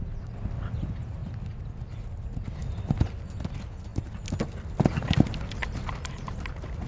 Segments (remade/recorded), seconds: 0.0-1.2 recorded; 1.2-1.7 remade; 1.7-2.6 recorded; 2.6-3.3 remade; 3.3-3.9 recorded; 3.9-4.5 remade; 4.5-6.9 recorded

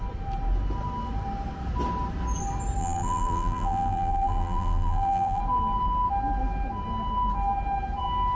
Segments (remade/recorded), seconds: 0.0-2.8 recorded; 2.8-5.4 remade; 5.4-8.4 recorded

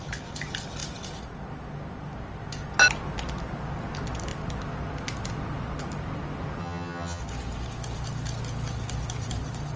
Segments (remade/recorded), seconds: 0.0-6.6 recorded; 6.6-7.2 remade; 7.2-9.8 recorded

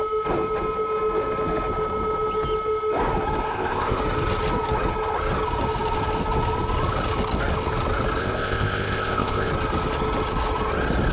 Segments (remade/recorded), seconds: 0.0-3.5 recorded; 3.5-4.0 remade; 4.0-8.2 recorded; 8.2-9.5 remade; 9.5-11.1 recorded

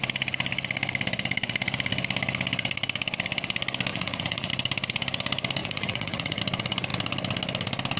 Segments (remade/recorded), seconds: 0.0-3.9 recorded; 3.9-4.5 remade; 4.5-5.6 recorded; 5.6-6.4 remade; 6.4-8.0 recorded

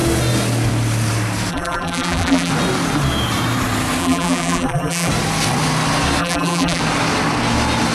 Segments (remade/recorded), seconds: 0.0-1.5 recorded; 1.5-2.5 remade; 2.5-4.0 recorded; 4.0-5.1 remade; 5.1-6.2 recorded; 6.2-6.8 remade; 6.8-7.9 recorded